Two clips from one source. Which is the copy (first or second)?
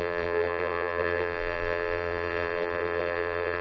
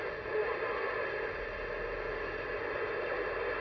first